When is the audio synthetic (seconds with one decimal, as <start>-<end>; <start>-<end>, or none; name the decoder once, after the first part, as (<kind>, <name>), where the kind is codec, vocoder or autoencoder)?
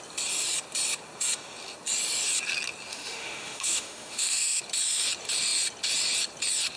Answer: 2.9-4.6 (autoencoder, DAC-VAE)